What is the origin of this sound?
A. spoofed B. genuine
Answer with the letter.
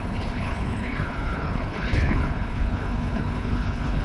A